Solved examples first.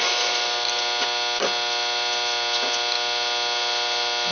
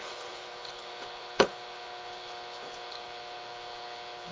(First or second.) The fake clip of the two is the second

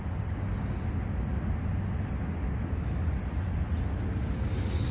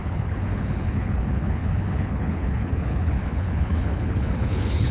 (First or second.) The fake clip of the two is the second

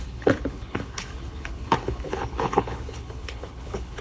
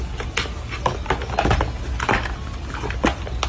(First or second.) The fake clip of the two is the first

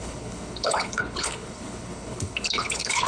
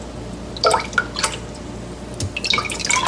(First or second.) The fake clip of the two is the first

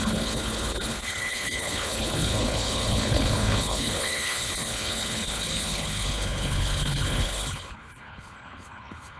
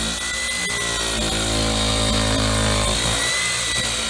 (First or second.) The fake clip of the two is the first